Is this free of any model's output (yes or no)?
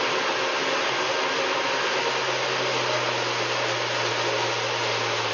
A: yes